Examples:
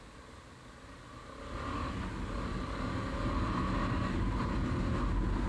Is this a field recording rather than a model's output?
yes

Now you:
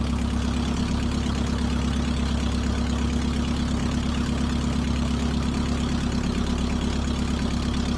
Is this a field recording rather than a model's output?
yes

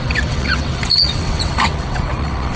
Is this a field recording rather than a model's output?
no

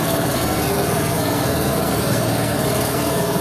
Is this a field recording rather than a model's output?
no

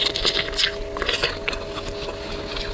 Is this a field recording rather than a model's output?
yes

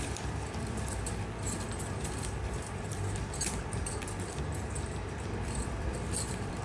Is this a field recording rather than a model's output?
no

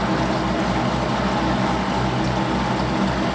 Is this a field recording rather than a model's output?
yes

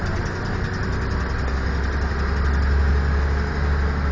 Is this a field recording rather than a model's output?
yes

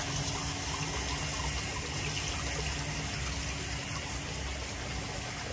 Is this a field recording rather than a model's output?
yes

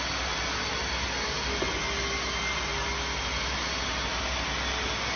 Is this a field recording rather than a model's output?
yes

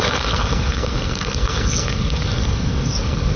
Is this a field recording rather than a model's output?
no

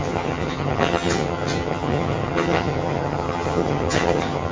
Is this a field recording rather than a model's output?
no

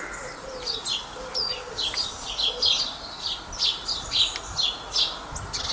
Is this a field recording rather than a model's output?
yes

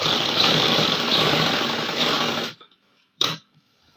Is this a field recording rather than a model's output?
no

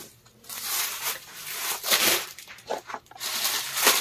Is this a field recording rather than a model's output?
no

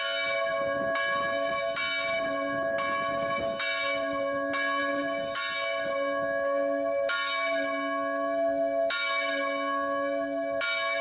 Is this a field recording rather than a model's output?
yes